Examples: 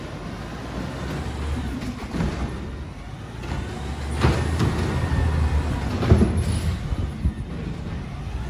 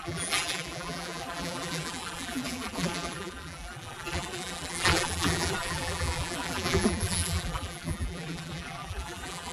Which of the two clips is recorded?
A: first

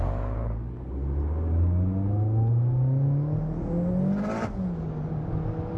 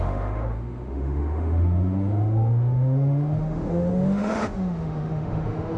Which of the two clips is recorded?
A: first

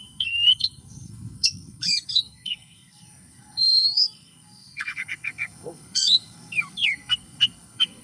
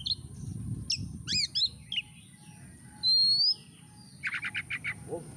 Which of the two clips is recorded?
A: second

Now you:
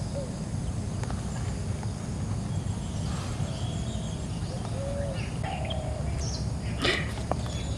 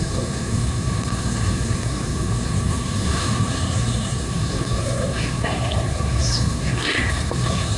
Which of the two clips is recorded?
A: first